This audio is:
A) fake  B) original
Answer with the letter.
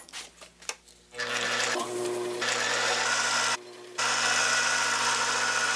B